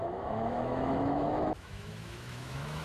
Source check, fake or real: fake